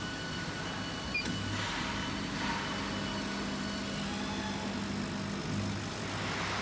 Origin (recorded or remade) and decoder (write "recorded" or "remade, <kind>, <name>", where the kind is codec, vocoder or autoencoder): recorded